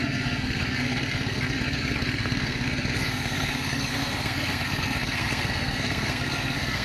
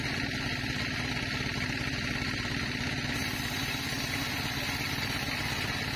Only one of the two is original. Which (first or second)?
second